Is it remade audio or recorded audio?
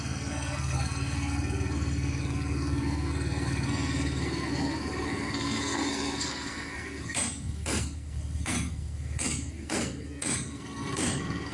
remade